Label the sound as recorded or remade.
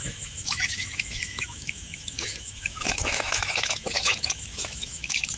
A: remade